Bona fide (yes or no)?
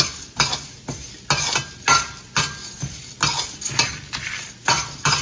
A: yes